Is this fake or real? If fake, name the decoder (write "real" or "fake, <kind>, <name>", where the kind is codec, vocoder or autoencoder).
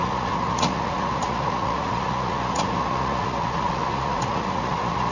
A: fake, vocoder, Vocos